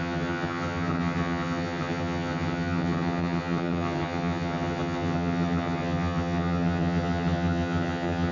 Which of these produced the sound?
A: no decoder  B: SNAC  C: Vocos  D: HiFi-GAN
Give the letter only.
D